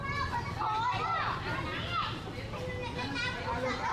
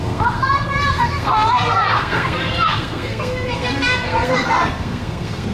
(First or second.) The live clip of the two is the first